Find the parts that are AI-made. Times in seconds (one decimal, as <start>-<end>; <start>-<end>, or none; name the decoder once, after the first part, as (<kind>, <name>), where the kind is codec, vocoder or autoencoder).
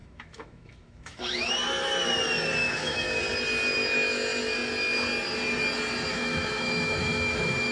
0.0-1.5 (autoencoder, DAC-VAE); 2.6-3.2; 6.1-7.7